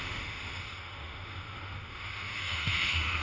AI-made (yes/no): yes